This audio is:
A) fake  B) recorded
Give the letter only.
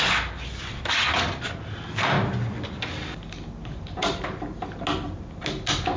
B